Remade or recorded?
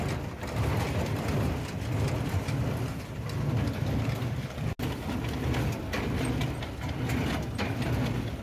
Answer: recorded